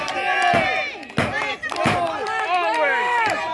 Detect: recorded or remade recorded